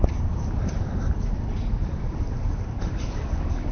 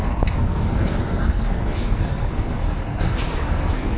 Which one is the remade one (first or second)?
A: second